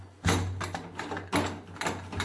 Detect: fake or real real